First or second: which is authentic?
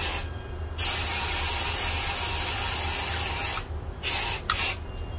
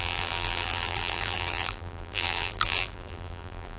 first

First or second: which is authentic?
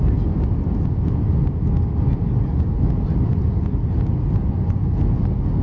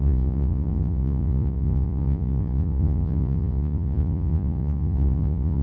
first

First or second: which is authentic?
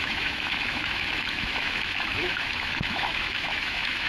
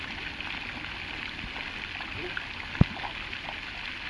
second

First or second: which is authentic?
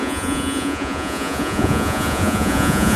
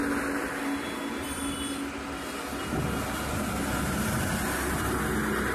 second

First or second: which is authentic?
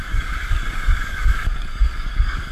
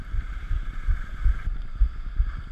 second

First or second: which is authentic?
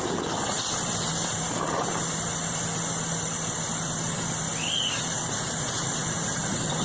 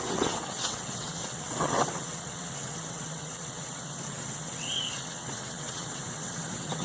first